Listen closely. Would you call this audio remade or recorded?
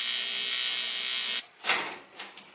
recorded